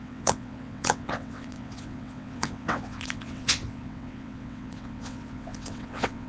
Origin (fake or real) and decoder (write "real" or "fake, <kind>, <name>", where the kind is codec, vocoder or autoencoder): fake, vocoder, WaveNeXt